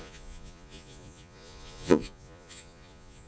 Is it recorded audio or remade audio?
remade